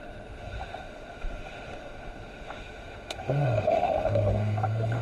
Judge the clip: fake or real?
fake